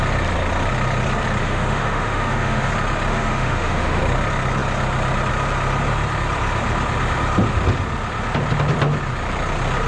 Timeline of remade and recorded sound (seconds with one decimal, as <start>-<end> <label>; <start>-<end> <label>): 0.0-1.4 recorded; 1.4-2.7 remade; 2.7-3.1 recorded; 3.1-4.0 remade; 4.0-9.9 recorded